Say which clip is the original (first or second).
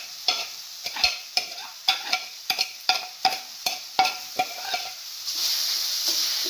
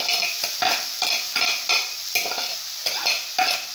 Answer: second